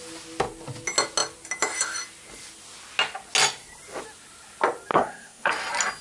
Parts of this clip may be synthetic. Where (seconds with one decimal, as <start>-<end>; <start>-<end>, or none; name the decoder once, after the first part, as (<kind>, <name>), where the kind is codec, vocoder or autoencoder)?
4.9-5.5 (codec, SNAC)